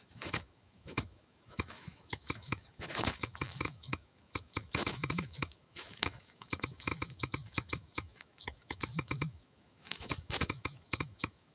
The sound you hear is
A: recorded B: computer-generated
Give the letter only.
B